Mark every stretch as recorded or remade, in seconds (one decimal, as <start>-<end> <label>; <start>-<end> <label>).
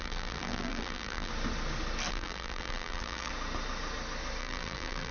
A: 0.0-1.3 remade; 1.3-2.1 recorded; 2.1-3.3 remade; 3.3-4.4 recorded; 4.4-5.1 remade